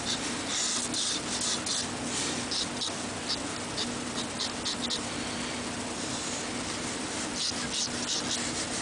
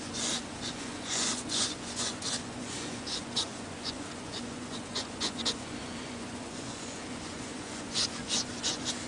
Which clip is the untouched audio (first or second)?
first